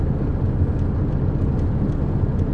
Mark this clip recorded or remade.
recorded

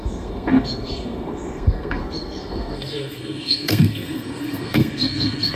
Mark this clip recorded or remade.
remade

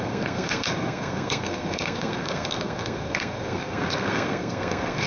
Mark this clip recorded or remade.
remade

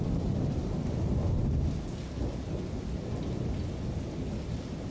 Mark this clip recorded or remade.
recorded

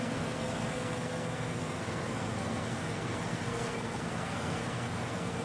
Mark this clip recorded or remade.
remade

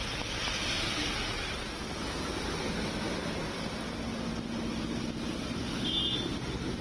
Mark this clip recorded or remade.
recorded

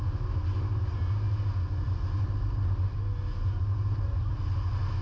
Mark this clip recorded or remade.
recorded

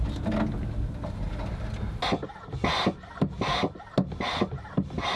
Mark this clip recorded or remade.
recorded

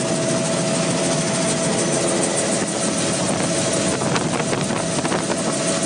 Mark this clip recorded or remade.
recorded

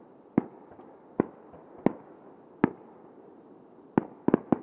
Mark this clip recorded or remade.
recorded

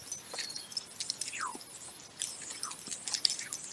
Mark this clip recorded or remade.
recorded